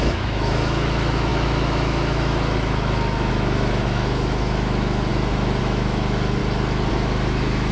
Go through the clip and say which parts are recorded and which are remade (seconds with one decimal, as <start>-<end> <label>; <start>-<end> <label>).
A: 0.0-6.4 remade; 6.4-6.9 recorded; 6.9-7.7 remade